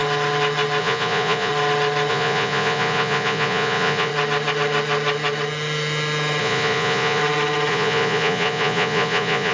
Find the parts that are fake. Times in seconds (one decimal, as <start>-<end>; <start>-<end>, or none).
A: 0.8-1.5; 2.1-4.1; 6.4-7.2; 7.7-9.5